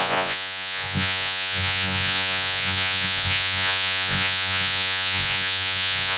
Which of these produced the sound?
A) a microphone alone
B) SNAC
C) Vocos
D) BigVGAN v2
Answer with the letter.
C